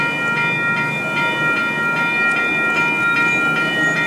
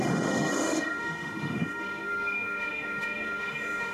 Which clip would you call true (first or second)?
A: first